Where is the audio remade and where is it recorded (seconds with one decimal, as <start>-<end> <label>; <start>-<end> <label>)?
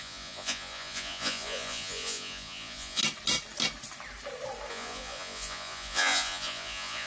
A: 0.0-3.0 remade; 3.0-4.7 recorded; 4.7-7.1 remade